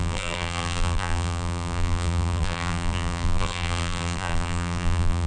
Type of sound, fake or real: fake